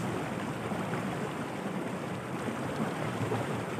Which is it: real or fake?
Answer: real